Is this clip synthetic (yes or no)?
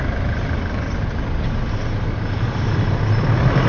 no